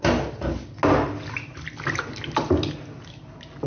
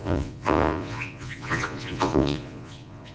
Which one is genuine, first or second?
first